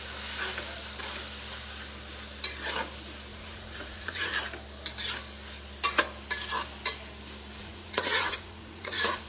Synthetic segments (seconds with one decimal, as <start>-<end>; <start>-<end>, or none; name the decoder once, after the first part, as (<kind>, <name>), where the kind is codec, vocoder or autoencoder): 3.3-4.3 (vocoder, Vocos); 7.6-9.3